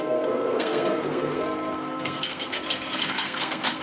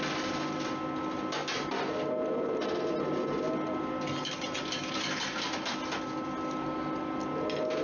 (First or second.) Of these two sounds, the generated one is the first